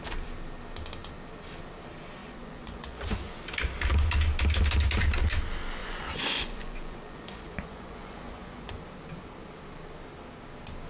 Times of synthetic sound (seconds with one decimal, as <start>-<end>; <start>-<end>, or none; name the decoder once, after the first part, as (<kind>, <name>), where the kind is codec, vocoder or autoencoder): 2.2-3.4 (vocoder, Vocos); 5.8-8.8